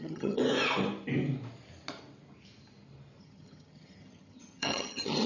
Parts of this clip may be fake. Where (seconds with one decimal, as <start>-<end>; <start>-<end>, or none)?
0.0-0.4; 3.2-5.3